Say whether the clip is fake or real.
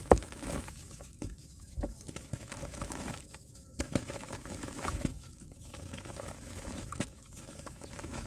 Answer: fake